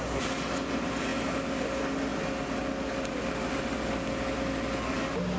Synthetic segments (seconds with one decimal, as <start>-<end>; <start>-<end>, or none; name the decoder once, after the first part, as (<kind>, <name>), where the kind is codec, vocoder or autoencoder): none